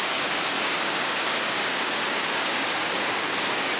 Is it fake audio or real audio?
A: fake